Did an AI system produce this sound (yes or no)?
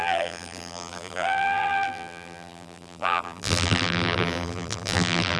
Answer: yes